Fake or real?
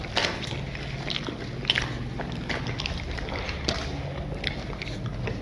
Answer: real